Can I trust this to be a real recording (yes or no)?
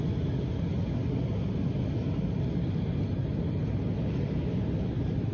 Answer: yes